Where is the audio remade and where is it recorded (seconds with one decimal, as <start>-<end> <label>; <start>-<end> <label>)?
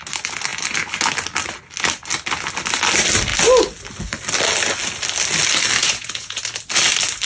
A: 0.0-5.8 recorded; 5.8-6.4 remade; 6.4-7.2 recorded